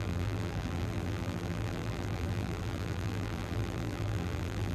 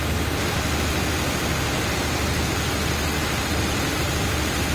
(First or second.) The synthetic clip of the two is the first